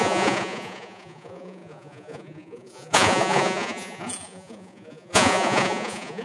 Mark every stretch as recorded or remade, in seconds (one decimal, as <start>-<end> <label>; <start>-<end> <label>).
0.0-6.2 remade